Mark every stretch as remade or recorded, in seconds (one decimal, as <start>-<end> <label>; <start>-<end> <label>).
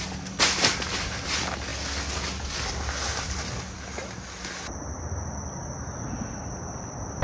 0.0-7.2 recorded